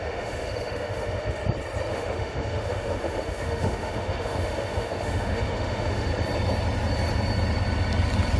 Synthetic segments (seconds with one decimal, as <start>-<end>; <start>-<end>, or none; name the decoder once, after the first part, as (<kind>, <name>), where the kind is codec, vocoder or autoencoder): 0.0-1.4 (autoencoder, DAC-VAE); 1.9-6.1